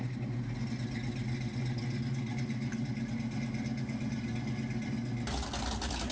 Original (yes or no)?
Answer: yes